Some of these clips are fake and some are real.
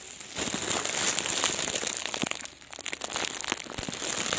real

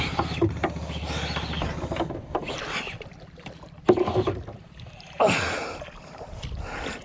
real